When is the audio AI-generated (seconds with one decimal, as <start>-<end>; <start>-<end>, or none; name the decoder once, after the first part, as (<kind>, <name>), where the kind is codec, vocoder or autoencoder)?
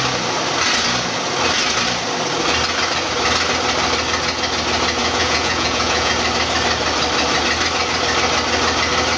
5.0-6.1 (vocoder, Vocos)